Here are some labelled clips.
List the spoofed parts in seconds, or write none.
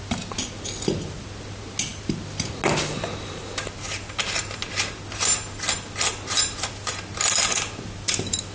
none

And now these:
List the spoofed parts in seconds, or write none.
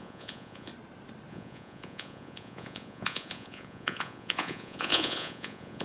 0.0-0.7 (vocoder, Vocos); 1.3-5.8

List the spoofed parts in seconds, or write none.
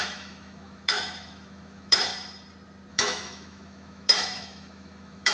0.0-2.1 (autoencoder, DAC-VAE); 2.9-5.3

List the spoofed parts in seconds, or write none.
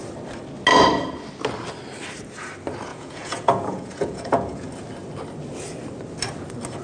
2.9-4.7 (vocoder, Vocos)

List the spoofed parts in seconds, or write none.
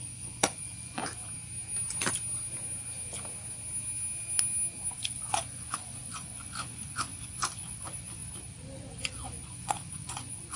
0.0-1.0 (vocoder, Vocos); 5.1-8.2; 9.0-10.6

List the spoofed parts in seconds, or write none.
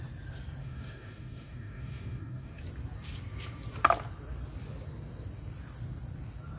0.6-2.6 (codec, DAC)